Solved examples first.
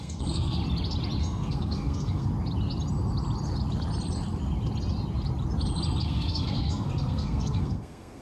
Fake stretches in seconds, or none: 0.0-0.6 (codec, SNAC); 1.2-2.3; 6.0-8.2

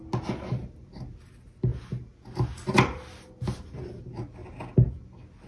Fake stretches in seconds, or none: none

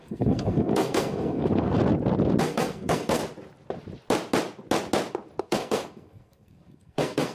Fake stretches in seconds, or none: 0.0-1.8 (codec, SNAC); 2.4-3.2; 5.4-7.3

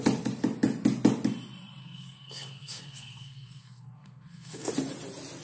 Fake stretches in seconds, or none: 1.8-4.7 (codec, SNAC)

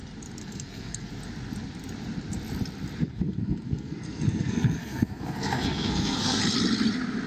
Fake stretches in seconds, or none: 0.4-1.1 (codec, SNAC); 3.0-6.4

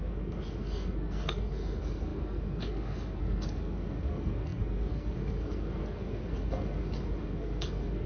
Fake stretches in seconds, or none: 0.0-8.1 (codec, SNAC)

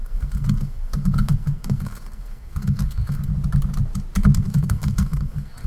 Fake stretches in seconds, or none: 0.0-3.3 (codec, SNAC); 4.4-5.7

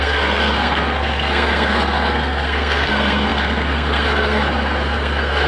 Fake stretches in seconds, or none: 0.0-5.5 (codec, SNAC)